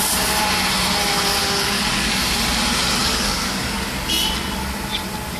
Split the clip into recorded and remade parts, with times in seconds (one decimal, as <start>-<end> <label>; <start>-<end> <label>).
0.0-1.4 recorded; 1.4-2.2 remade; 2.2-3.0 recorded; 3.0-4.1 remade; 4.1-5.4 recorded